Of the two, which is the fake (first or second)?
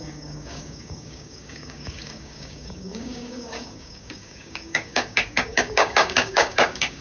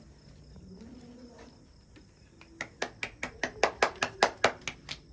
first